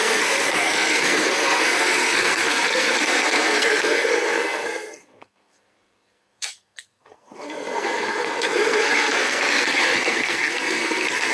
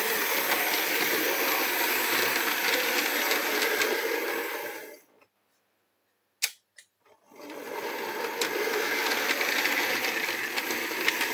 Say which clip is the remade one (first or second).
first